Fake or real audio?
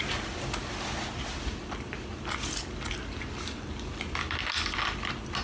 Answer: real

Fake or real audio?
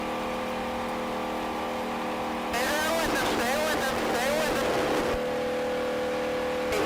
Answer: real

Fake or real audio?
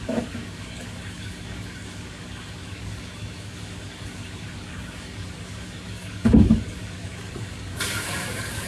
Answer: fake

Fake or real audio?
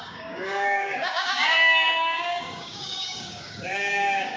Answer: fake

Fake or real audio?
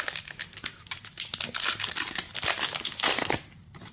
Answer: real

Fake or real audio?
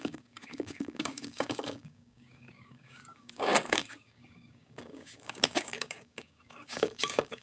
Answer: fake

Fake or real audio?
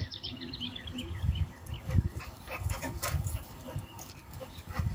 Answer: fake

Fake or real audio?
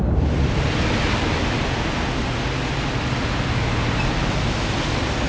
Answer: real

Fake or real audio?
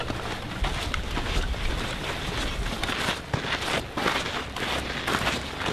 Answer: real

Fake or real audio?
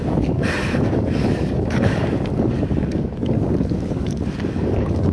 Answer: fake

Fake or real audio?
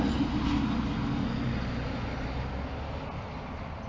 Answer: real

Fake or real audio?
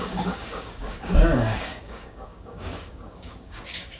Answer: fake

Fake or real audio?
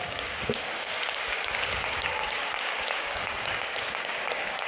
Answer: fake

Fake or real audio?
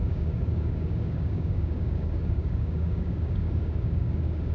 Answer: fake